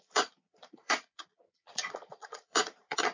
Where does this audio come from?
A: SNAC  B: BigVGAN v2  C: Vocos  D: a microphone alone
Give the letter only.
C